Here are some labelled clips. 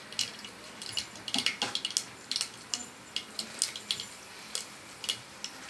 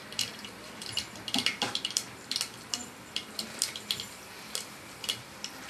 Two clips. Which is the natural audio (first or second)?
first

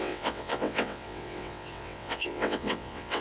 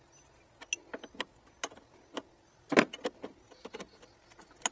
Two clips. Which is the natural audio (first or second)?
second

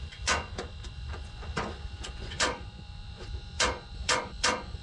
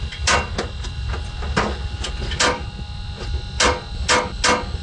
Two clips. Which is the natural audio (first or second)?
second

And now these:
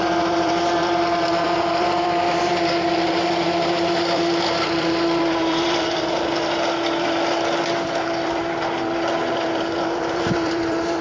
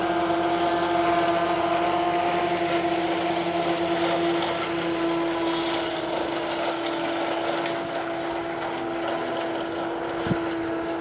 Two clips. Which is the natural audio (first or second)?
second